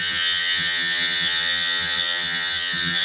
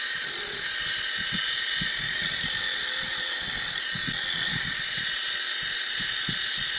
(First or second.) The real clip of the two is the second